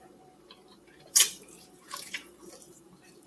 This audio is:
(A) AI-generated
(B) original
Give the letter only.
A